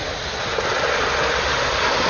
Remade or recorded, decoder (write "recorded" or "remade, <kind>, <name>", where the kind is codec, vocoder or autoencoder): recorded